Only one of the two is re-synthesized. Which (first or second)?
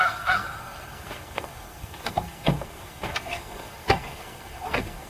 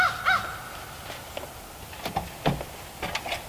first